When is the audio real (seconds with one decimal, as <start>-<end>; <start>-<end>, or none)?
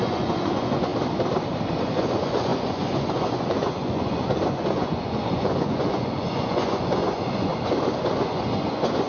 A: 0.9-1.7; 7.5-8.0